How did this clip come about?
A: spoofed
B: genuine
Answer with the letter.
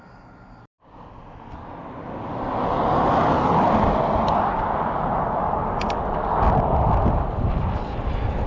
B